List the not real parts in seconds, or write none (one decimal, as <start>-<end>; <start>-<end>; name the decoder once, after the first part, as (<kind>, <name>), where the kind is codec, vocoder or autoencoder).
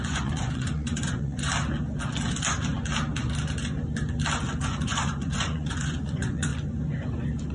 0.0-1.5 (vocoder, Vocos); 4.6-6.5